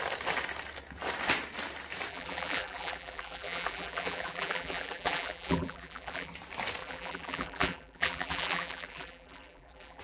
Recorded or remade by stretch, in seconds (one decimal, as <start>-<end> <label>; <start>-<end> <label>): 0.0-2.1 recorded; 2.1-6.3 remade; 6.3-6.8 recorded; 6.8-10.0 remade